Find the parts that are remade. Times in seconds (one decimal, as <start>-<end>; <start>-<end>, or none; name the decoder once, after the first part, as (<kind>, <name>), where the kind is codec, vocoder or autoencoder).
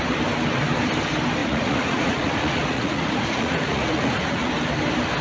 1.4-4.5 (vocoder, Vocos)